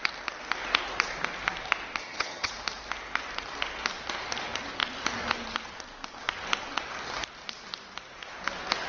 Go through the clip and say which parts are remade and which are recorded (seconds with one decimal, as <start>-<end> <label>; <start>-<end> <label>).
0.0-2.0 recorded; 2.0-2.5 remade; 2.5-8.9 recorded